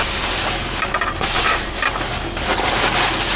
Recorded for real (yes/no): yes